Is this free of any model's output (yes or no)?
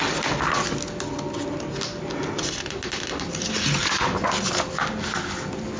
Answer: yes